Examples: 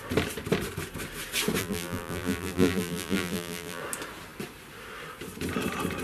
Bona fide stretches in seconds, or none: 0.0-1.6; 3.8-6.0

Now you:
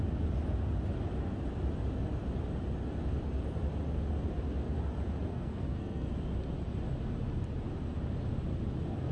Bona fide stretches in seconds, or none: 0.0-5.3; 6.1-9.1

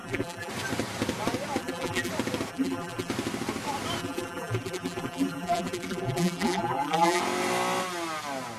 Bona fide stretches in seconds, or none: 0.5-1.6; 2.1-2.5; 3.1-4.0; 7.2-8.6

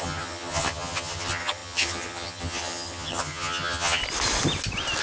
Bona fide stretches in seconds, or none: 4.0-5.0

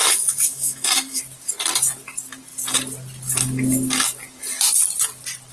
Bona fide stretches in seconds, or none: 1.2-5.5